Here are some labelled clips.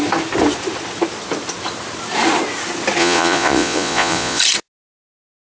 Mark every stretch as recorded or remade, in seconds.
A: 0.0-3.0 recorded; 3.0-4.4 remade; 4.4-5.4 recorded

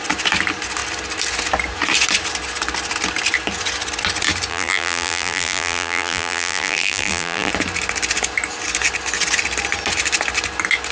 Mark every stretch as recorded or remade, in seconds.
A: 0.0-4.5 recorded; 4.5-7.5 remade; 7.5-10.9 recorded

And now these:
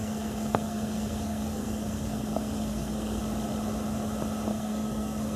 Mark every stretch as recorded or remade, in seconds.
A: 0.0-3.2 remade; 3.2-4.5 recorded; 4.5-5.4 remade